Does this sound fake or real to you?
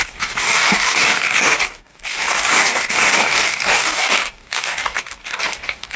fake